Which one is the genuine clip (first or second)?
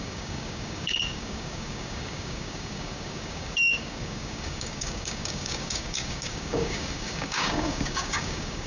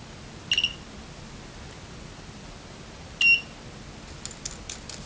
second